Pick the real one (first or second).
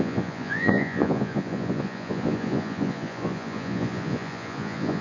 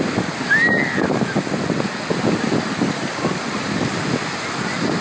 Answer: second